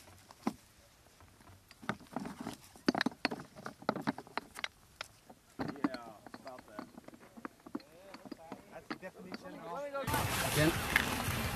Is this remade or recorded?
recorded